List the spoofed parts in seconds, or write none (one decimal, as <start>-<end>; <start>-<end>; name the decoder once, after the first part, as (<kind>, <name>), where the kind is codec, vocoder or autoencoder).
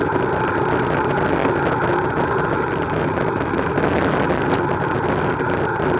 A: none